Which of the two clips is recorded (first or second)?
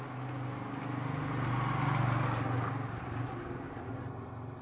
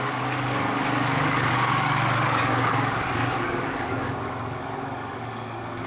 first